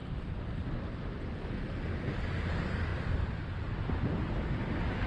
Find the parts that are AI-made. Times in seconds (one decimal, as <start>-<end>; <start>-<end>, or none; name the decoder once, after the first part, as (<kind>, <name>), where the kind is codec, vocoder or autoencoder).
0.0-1.2 (vocoder, BigVGAN v2)